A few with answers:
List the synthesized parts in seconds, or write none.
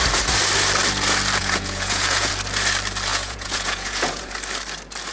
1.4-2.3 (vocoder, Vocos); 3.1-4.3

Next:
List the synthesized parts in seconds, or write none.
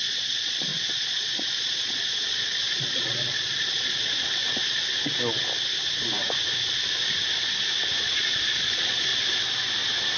0.0-4.4 (vocoder, Vocos); 8.1-9.1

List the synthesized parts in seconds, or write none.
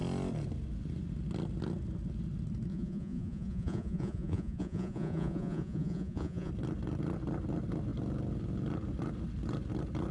2.7-6.5 (vocoder, Vocos)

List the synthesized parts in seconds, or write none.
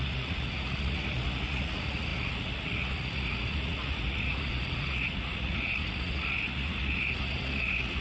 0.0-8.0 (vocoder, Vocos)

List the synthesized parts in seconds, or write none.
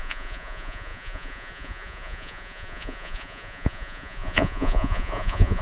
0.0-5.6 (vocoder, Vocos)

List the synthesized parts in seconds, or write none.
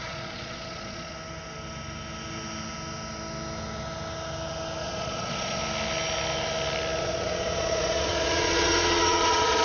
0.0-1.1 (vocoder, Vocos); 4.8-5.6; 7.0-9.6